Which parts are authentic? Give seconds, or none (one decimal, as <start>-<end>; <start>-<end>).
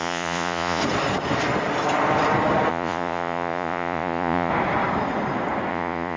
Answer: 0.8-2.7; 4.5-5.7